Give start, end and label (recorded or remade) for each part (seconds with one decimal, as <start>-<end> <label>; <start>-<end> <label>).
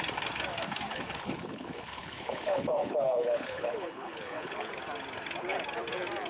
0.0-0.9 recorded; 0.9-4.7 remade; 4.7-6.3 recorded